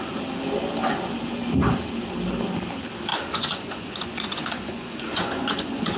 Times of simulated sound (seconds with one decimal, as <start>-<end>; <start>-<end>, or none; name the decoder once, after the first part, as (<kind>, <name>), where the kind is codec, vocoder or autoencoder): 3.1-6.0 (vocoder, Vocos)